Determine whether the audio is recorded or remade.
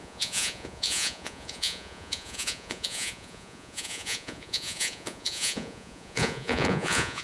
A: remade